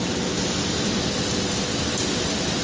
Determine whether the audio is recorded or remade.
recorded